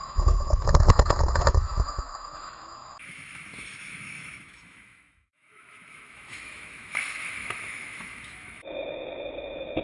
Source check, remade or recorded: remade